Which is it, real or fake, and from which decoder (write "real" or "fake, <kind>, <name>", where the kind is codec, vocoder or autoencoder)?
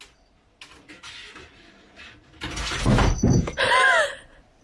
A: real